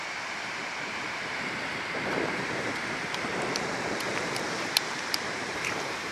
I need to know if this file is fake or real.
fake